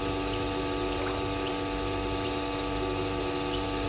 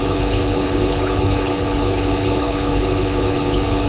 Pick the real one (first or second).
first